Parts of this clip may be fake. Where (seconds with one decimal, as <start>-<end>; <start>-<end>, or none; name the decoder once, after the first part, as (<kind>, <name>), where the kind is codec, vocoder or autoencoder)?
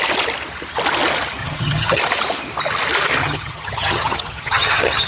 1.4-2.0 (vocoder, HiFi-GAN); 3.2-5.1